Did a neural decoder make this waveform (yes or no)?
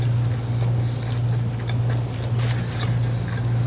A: no